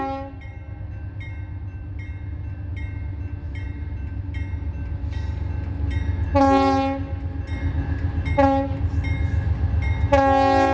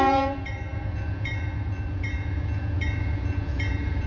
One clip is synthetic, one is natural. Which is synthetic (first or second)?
second